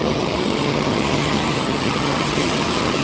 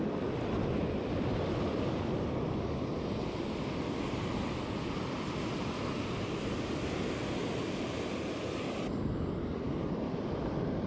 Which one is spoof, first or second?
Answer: first